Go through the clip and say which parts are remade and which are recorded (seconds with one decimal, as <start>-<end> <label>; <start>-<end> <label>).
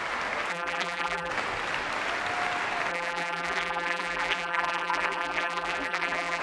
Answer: 0.0-0.5 recorded; 0.5-1.3 remade; 1.3-2.9 recorded; 2.9-6.4 remade